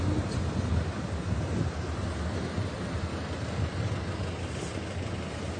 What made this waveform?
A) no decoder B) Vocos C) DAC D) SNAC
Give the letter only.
A